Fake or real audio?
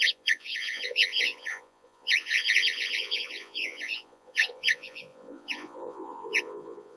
fake